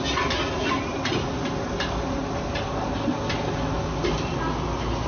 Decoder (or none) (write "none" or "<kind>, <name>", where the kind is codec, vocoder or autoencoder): none